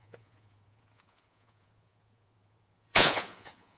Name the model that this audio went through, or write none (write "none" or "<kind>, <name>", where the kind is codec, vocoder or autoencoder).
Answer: vocoder, Vocos